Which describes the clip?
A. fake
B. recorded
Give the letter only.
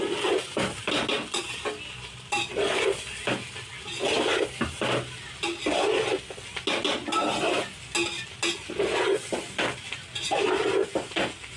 B